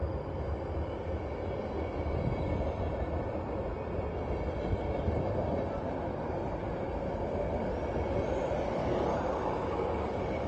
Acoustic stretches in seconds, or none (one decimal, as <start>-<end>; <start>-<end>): 0.0-9.1